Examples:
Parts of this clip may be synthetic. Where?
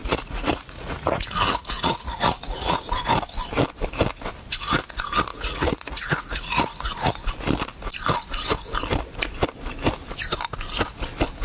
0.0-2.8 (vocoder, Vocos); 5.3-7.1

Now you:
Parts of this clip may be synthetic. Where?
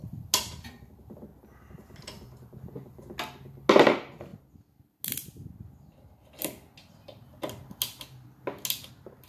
none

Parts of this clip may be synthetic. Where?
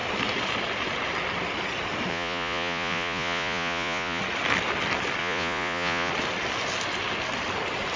2.1-4.2 (vocoder, Vocos); 5.2-6.1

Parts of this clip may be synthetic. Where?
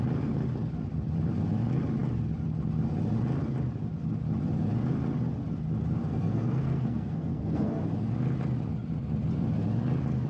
6.0-7.8 (codec, SNAC)